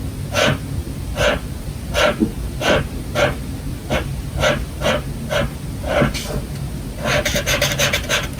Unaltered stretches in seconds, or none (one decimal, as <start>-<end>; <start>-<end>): 0.0-3.7; 4.7-8.4